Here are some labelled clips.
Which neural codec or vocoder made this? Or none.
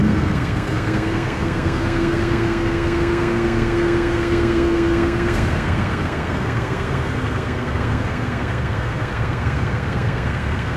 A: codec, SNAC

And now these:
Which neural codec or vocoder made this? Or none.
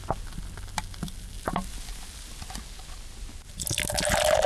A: none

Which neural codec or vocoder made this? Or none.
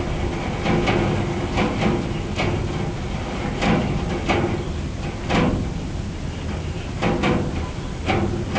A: none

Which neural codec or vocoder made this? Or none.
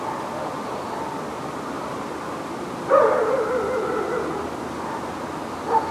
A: none